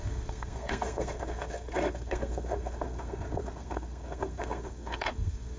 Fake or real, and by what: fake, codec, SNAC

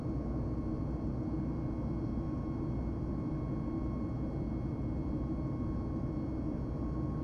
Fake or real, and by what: real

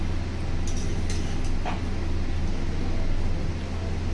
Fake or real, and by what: real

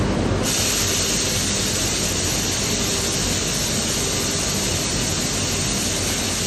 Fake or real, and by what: real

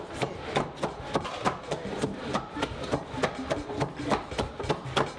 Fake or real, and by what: real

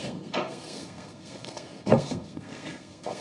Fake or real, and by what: fake, codec, SNAC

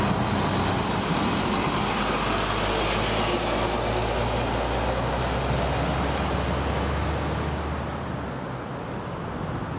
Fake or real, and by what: real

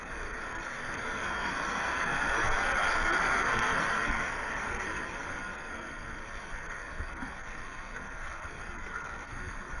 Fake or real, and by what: fake, codec, SNAC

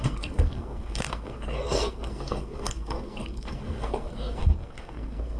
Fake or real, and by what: fake, codec, SNAC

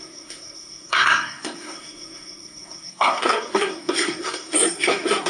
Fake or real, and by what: fake, codec, SNAC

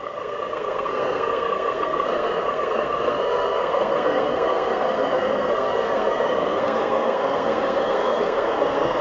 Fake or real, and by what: fake, codec, SNAC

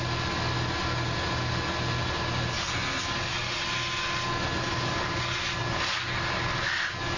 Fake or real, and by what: real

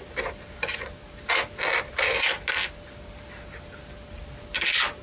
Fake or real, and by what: real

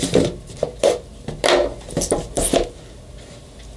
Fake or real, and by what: real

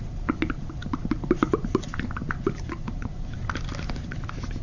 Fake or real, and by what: real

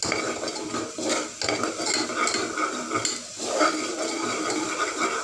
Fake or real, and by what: real